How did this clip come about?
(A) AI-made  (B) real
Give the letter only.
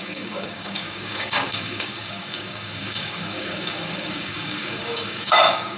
A